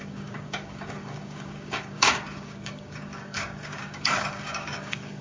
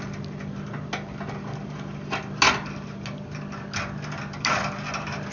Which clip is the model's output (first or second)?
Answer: first